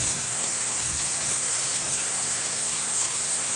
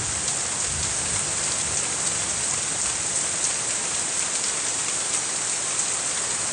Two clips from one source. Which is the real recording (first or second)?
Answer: second